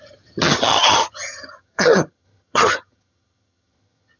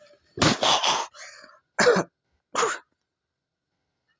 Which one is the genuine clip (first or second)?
second